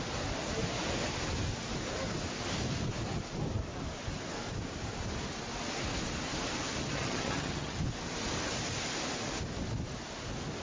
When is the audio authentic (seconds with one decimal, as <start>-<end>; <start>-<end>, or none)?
0.0-6.8; 7.8-10.6